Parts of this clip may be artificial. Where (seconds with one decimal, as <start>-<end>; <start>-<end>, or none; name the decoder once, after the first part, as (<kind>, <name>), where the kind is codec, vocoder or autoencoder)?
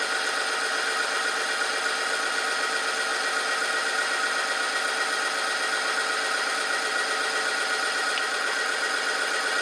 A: none